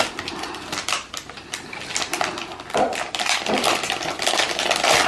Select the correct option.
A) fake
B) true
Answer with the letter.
B